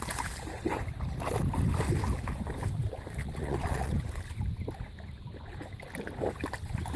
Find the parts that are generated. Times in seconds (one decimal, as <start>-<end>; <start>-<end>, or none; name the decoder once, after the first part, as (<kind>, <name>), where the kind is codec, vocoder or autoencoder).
3.2-3.9 (vocoder, Vocos)